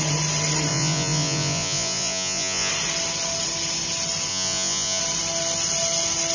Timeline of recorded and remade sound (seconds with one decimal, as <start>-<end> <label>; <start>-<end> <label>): 0.0-0.7 recorded; 0.7-2.7 remade; 2.7-4.3 recorded; 4.3-5.0 remade; 5.0-6.3 recorded